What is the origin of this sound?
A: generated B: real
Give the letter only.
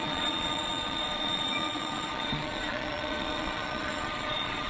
A